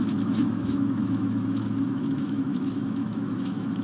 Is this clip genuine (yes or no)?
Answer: no